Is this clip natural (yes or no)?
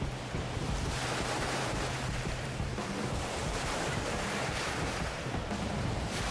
no